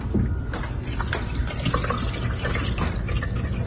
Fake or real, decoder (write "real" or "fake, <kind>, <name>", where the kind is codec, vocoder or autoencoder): fake, vocoder, BigVGAN v2